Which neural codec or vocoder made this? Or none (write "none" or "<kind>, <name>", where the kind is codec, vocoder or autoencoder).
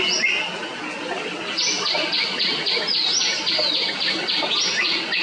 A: none